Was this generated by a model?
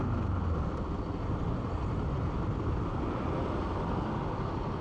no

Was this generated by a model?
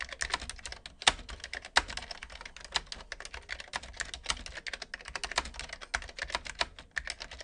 no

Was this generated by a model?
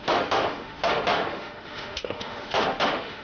yes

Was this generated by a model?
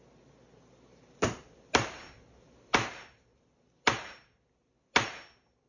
no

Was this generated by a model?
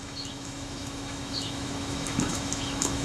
yes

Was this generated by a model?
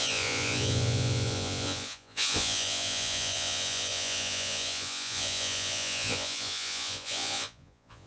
yes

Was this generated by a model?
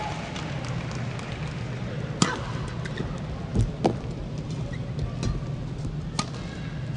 no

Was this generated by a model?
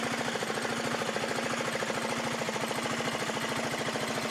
no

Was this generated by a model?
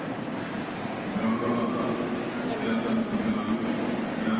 no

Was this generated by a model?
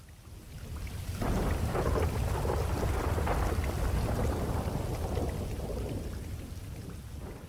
no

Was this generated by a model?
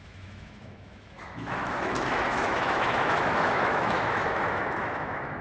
yes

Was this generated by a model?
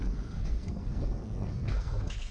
yes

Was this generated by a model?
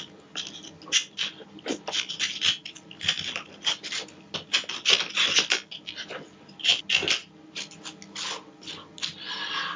no